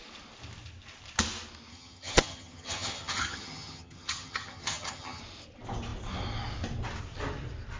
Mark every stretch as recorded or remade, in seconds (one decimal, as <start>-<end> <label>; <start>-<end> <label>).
0.0-1.7 recorded; 1.7-5.2 remade; 5.2-7.8 recorded